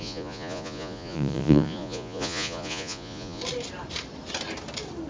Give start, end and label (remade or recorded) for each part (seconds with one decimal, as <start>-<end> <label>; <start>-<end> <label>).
0.0-3.4 remade; 3.4-5.1 recorded